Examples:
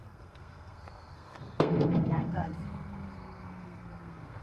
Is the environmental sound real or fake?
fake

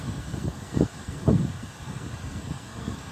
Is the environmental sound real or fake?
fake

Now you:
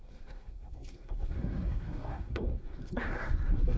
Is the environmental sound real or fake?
fake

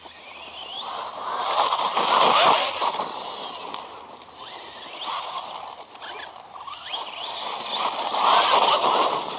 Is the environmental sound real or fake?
real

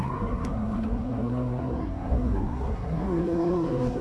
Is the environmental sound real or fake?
fake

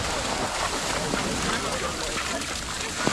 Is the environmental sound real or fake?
real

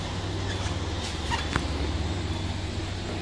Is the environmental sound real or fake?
real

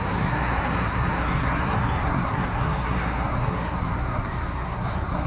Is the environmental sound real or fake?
fake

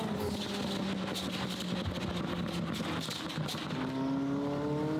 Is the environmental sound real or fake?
real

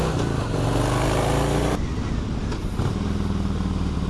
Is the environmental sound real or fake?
real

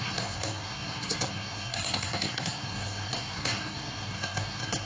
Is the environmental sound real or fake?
fake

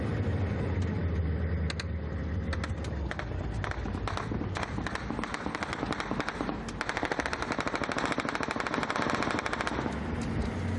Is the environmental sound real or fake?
real